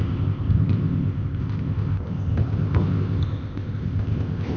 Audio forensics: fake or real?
fake